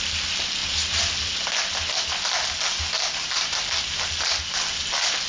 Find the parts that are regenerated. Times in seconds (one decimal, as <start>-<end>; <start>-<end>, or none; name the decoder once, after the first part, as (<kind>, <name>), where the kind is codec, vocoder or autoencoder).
none